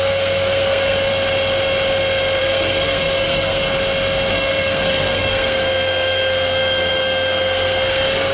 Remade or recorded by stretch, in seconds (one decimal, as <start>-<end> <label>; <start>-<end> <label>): 0.0-1.1 remade; 1.1-2.4 recorded; 2.4-3.7 remade; 3.7-4.3 recorded; 4.3-8.3 remade